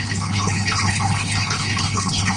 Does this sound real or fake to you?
fake